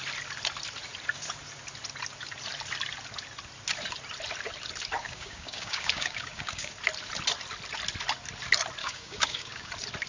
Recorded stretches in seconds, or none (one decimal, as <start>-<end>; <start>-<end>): 0.0-5.0; 6.7-8.8; 9.7-10.1